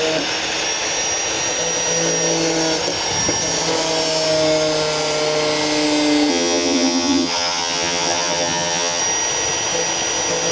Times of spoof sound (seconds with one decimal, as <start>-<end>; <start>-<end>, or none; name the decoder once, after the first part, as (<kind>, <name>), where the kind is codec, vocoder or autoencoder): 6.3-9.0 (vocoder, HiFi-GAN)